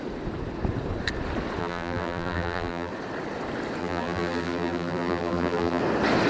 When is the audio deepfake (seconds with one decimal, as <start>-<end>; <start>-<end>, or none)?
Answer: 1.6-2.9; 3.8-5.8